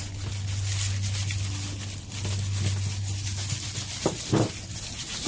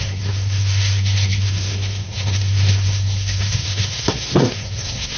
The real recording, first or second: first